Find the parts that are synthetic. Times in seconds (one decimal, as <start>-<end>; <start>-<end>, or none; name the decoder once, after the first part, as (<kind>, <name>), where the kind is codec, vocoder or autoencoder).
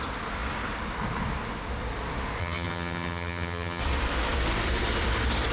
2.4-3.8 (vocoder, HiFi-GAN)